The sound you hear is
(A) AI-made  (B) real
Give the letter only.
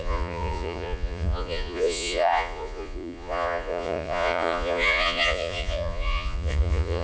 A